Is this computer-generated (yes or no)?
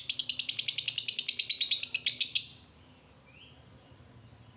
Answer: no